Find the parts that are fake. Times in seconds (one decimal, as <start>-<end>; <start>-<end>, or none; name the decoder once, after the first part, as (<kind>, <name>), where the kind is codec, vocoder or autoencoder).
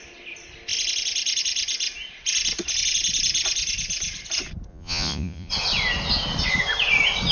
4.7-5.5 (vocoder, Vocos)